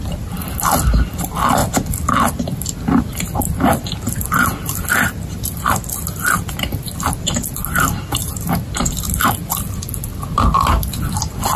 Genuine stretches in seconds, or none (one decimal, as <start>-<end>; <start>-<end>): 0.0-11.6